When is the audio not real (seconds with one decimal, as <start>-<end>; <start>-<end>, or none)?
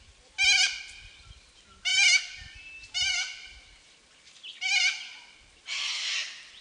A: none